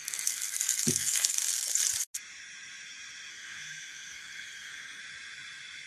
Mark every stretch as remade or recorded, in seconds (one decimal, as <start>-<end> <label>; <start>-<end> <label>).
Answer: 0.0-1.4 remade; 1.4-3.3 recorded; 3.3-5.0 remade; 5.0-5.9 recorded